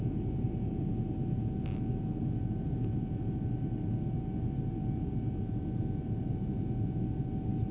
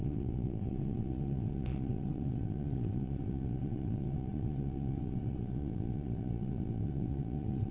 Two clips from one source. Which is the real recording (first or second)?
first